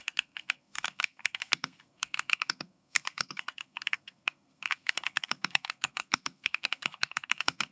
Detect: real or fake fake